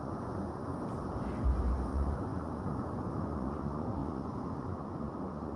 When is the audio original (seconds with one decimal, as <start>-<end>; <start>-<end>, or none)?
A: 0.7-1.9